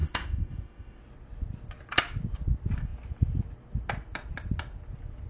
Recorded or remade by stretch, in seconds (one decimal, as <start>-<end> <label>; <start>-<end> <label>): 0.0-1.0 remade; 1.0-5.3 recorded